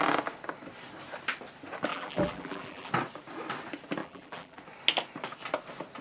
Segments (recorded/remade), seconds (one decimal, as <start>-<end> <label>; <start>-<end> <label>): 0.0-1.9 recorded; 1.9-2.9 remade; 2.9-4.0 recorded; 4.0-4.6 remade; 4.6-6.0 recorded